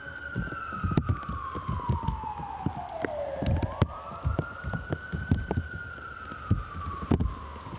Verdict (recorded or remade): recorded